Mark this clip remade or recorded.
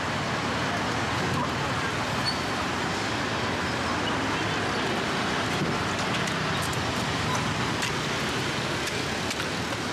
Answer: recorded